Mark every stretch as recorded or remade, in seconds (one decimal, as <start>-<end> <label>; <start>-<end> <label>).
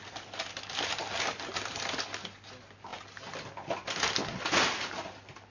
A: 0.0-5.5 recorded